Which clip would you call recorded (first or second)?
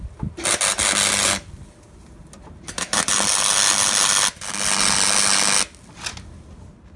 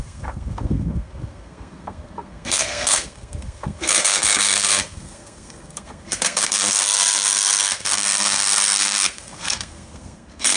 first